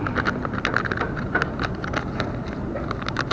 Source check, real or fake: real